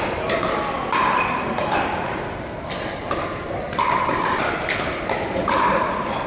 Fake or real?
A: fake